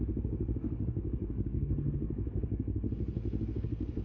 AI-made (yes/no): yes